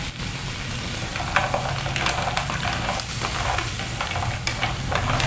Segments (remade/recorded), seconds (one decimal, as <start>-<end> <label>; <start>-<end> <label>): 0.0-5.3 recorded